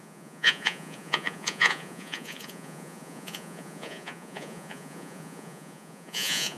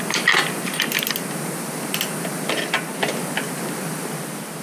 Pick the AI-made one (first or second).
first